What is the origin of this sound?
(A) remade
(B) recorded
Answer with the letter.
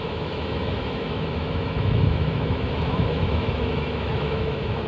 A